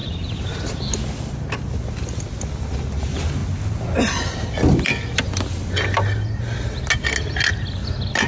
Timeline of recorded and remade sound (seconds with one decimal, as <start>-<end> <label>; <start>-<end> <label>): 0.0-0.8 remade; 0.8-8.3 recorded